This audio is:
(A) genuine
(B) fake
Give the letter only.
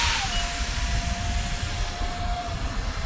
A